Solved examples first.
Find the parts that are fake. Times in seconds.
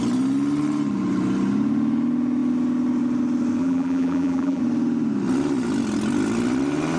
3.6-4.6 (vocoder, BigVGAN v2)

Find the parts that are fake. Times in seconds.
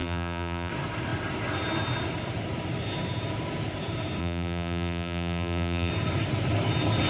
0.0-0.7 (vocoder, BigVGAN v2); 4.2-5.9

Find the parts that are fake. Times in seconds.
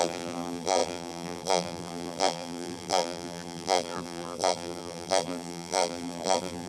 0.0-6.7 (vocoder, BigVGAN v2)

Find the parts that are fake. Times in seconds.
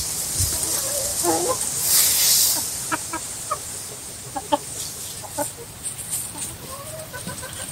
1.1-3.5 (vocoder, BigVGAN v2)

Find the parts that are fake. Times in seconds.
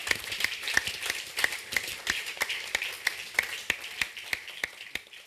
1.9-2.9 (vocoder, BigVGAN v2)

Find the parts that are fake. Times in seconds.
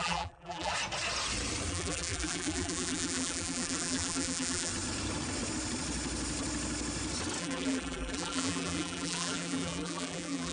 0.0-0.7 (vocoder, BigVGAN v2); 1.7-4.7; 7.4-10.5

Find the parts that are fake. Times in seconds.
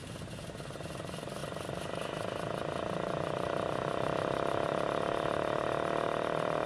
1.4-5.0 (vocoder, BigVGAN v2)